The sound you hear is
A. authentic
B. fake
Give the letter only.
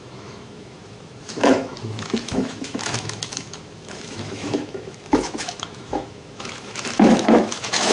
B